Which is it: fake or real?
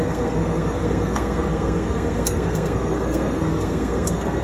fake